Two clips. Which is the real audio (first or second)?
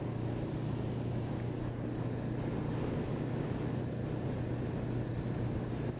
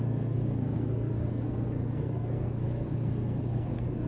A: first